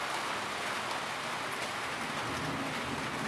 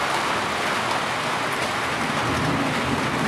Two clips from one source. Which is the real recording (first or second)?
first